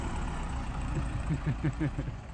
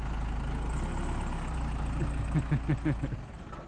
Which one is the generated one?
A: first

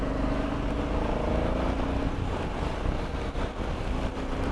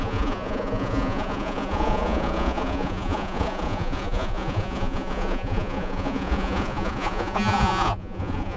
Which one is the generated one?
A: second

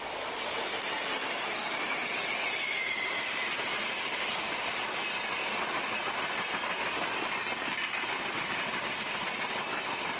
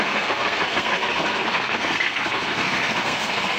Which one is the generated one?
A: second